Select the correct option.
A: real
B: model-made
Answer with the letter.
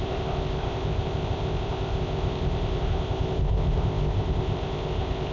B